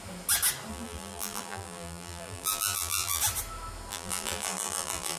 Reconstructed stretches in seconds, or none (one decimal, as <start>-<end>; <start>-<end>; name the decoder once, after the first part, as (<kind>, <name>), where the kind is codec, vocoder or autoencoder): 0.7-3.2 (vocoder, BigVGAN v2); 3.9-5.2